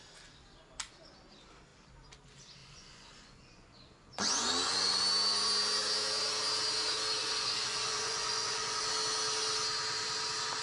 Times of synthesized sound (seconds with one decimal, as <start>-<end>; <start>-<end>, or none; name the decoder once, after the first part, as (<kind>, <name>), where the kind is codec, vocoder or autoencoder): 2.6-5.0 (vocoder, Vocos); 7.2-8.8